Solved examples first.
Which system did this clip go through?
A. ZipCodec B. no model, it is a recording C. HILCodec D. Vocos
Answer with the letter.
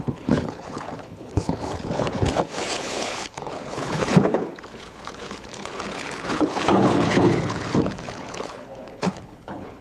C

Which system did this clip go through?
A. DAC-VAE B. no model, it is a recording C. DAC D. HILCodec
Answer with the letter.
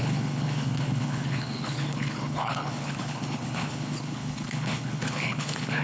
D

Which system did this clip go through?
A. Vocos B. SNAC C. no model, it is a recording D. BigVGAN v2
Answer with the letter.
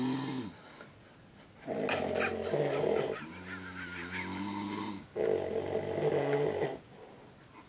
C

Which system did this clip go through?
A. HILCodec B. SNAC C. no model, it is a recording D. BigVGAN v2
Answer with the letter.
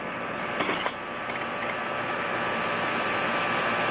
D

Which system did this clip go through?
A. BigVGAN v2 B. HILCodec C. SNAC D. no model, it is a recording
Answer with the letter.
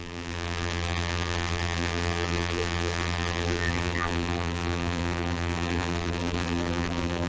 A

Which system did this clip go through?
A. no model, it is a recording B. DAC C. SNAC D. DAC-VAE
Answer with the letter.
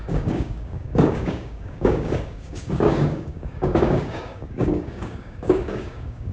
B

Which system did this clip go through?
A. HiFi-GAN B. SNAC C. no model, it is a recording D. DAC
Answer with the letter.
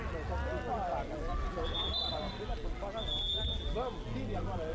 C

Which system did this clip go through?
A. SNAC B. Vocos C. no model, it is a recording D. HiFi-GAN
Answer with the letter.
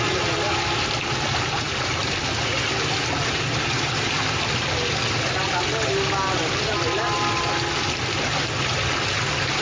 C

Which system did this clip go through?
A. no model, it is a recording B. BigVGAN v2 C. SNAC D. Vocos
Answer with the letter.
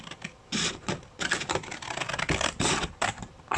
A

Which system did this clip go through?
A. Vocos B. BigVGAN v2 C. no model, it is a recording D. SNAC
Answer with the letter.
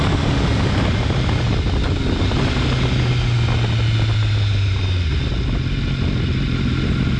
C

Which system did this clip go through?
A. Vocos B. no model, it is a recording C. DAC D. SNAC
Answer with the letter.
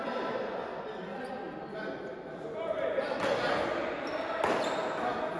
B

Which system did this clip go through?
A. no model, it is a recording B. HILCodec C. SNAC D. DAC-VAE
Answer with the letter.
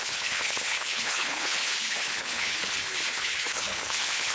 B